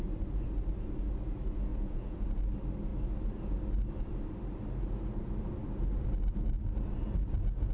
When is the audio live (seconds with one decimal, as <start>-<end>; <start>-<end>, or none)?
0.0-1.7; 2.4-7.7